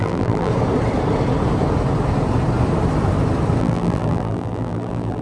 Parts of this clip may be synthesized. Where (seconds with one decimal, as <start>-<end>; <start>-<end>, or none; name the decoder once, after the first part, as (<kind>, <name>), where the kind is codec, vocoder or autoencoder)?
0.0-0.5 (vocoder, BigVGAN v2); 3.6-5.2